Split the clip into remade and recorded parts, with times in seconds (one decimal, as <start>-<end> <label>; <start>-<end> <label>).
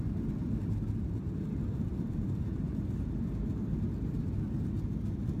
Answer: 0.0-1.9 recorded; 1.9-3.5 remade; 3.5-5.4 recorded